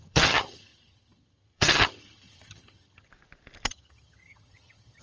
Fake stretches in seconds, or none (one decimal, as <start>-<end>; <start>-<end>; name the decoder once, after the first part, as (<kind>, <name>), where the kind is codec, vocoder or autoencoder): 0.0-3.1 (vocoder, HiFi-GAN); 3.7-5.0